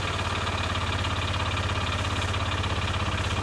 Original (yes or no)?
yes